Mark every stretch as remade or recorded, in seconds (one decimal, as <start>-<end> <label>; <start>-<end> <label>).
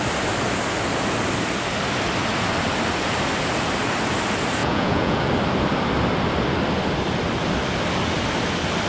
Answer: 0.0-4.6 recorded; 4.6-5.3 remade; 5.3-8.9 recorded